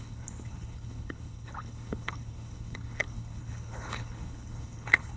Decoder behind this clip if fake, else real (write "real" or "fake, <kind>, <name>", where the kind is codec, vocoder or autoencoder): fake, codec, HILCodec